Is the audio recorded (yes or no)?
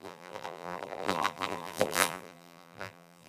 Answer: no